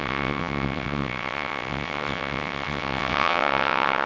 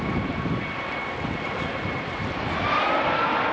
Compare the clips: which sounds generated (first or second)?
first